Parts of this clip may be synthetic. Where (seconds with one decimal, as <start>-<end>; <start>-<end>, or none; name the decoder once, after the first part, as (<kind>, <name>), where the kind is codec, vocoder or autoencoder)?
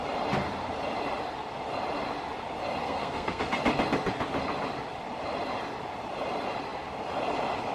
2.8-3.4 (codec, SNAC)